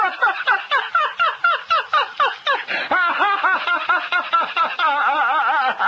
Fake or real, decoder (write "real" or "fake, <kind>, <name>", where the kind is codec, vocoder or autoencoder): real